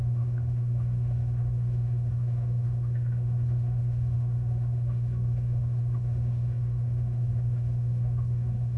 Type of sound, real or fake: fake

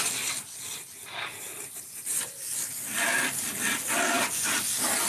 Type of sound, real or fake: real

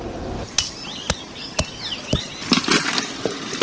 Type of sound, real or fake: real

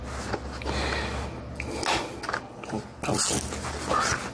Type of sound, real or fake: real